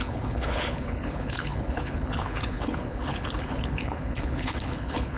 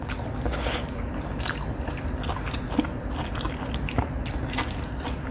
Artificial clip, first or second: first